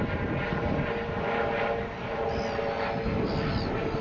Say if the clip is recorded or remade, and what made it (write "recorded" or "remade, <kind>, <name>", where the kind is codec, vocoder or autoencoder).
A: recorded